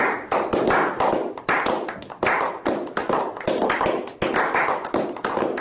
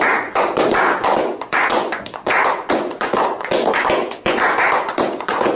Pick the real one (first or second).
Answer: first